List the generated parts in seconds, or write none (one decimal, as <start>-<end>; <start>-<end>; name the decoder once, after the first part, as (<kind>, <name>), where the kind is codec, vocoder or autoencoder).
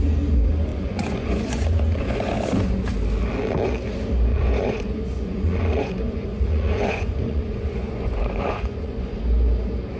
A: 0.7-2.7 (vocoder, Vocos); 4.3-9.2